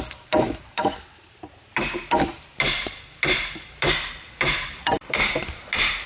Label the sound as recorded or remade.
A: remade